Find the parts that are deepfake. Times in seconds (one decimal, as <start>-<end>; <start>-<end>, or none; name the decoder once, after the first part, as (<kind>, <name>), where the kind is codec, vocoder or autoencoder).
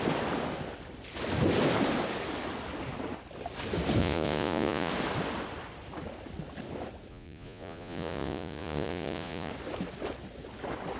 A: 4.0-4.9 (vocoder, Vocos); 7.1-9.5